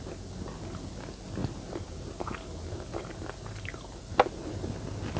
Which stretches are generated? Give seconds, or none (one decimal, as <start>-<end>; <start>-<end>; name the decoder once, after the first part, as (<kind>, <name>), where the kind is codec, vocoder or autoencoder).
none